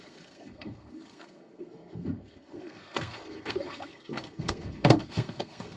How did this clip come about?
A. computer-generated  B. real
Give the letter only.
A